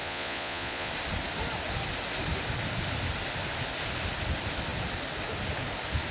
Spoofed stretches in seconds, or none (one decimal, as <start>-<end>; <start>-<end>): 0.0-0.9